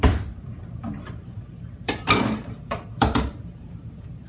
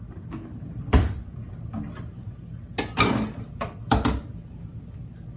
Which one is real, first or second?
second